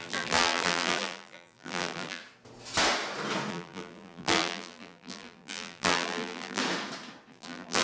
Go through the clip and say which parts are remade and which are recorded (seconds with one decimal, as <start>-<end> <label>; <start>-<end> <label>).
0.0-2.2 remade; 2.2-3.5 recorded; 3.5-6.6 remade; 6.6-7.3 recorded; 7.3-7.8 remade